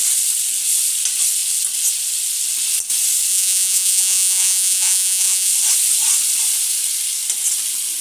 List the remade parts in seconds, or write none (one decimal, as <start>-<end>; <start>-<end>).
3.3-5.5